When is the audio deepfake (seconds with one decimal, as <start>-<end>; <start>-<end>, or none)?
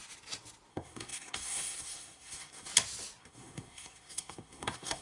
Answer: 0.7-2.7; 3.2-5.0